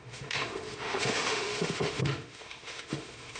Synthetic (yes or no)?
yes